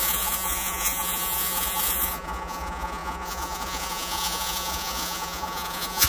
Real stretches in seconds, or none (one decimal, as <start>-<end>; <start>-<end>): none